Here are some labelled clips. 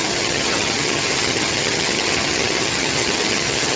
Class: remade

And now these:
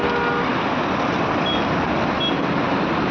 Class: recorded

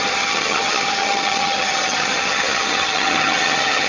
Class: remade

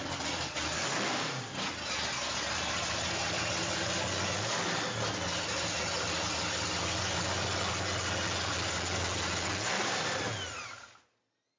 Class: recorded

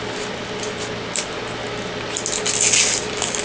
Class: recorded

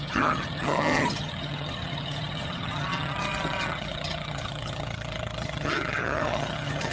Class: remade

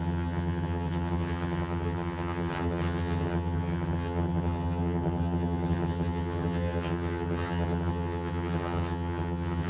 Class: remade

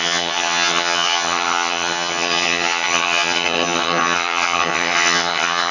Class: remade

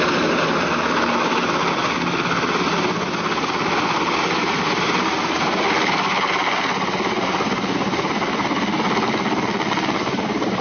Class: recorded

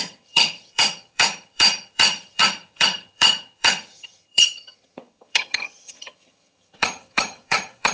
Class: remade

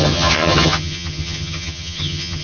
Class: remade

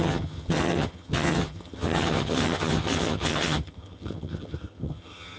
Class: remade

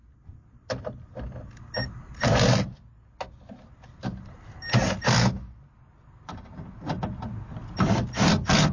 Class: recorded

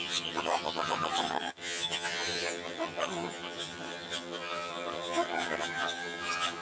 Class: remade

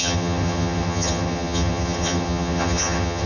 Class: remade